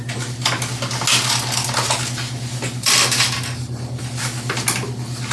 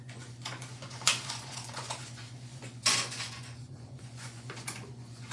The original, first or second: first